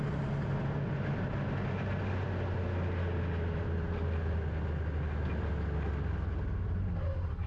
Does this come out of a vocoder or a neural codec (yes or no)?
no